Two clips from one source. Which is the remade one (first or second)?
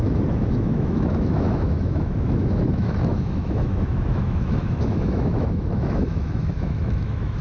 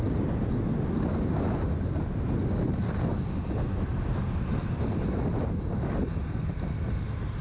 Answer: first